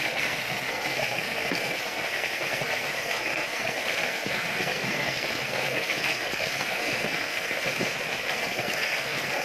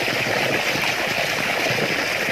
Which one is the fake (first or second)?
first